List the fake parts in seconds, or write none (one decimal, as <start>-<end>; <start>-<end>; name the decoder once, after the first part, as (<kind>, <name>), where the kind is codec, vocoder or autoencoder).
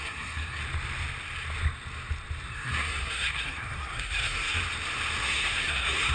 0.0-0.6 (codec, SNAC); 2.5-4.6; 5.2-6.1